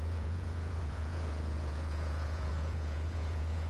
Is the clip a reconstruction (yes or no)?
yes